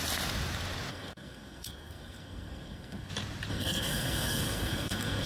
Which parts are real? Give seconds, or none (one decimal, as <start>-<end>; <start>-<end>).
0.0-0.9; 3.1-3.5